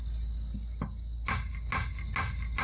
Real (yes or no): yes